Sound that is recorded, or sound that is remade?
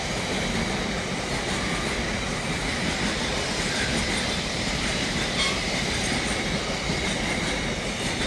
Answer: recorded